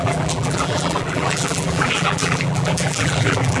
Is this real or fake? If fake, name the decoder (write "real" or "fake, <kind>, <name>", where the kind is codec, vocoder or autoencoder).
fake, vocoder, BigVGAN v2